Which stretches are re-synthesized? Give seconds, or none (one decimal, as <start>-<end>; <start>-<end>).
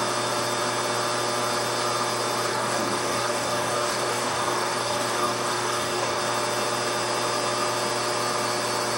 2.5-6.2